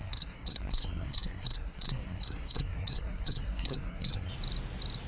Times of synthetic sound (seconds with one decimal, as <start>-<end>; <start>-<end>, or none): 0.0-4.3